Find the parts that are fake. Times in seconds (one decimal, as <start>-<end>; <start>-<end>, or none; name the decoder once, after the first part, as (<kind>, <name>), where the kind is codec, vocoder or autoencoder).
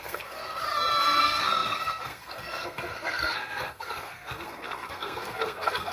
0.0-0.6 (codec, SNAC); 1.2-5.9